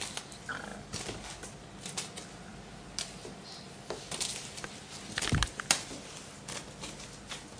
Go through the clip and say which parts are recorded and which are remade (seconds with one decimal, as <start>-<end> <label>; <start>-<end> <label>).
0.0-7.6 recorded